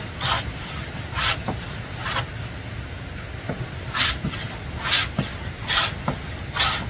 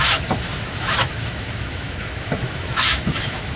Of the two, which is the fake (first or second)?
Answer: second